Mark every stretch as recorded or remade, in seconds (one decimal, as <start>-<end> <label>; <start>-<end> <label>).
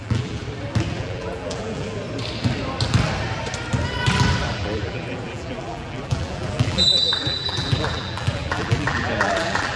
0.0-0.4 remade; 0.4-1.0 recorded; 1.0-2.0 remade; 2.0-4.5 recorded; 4.5-9.8 remade